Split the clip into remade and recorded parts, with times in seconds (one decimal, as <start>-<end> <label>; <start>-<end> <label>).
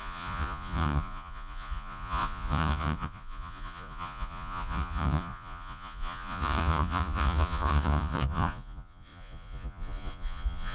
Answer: 0.0-10.7 remade